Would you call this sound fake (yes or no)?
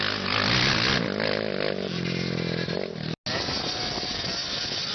no